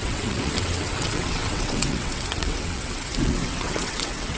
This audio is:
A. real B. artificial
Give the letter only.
B